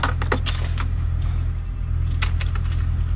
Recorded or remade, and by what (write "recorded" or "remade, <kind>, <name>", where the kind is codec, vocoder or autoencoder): recorded